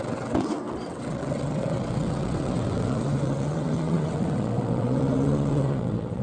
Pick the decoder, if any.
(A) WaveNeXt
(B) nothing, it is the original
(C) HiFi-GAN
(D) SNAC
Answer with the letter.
A